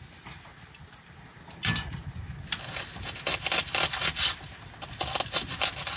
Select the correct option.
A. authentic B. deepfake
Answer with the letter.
A